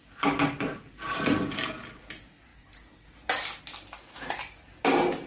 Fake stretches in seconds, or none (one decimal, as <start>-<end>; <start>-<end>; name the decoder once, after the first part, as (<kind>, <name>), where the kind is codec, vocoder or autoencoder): none